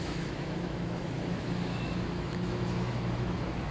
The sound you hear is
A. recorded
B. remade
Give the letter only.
B